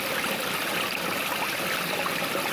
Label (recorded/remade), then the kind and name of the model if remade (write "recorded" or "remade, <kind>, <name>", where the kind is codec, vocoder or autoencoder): recorded